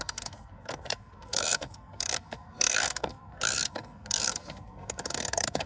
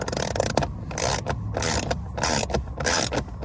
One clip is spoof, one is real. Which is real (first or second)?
second